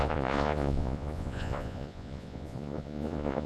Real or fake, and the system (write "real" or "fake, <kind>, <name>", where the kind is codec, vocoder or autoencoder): fake, vocoder, Vocos